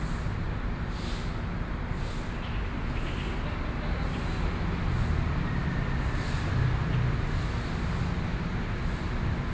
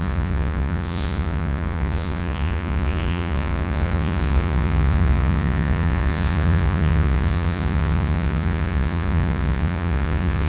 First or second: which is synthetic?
second